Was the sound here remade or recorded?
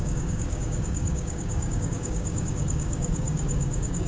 remade